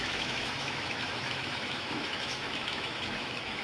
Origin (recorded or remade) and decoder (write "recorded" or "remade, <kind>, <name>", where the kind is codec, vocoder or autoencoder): remade, autoencoder, DAC-VAE